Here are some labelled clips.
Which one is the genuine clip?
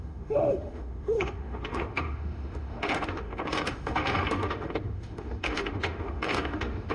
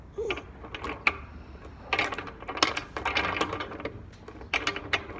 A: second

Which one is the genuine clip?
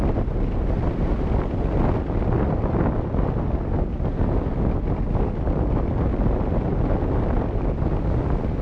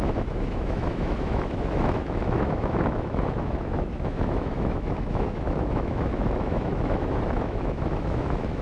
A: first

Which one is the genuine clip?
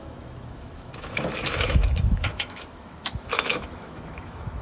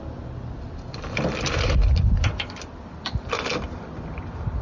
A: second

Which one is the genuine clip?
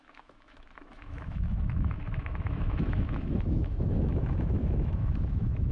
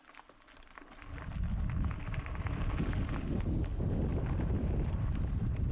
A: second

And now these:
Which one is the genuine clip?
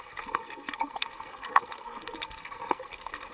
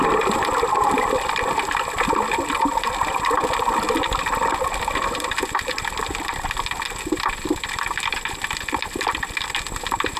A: second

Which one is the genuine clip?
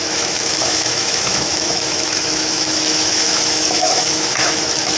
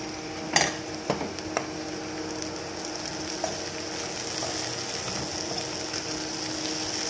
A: second